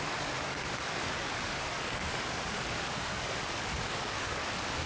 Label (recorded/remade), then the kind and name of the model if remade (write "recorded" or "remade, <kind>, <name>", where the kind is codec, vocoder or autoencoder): remade, codec, DAC